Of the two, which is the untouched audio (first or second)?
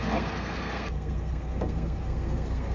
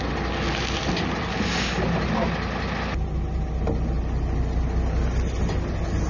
second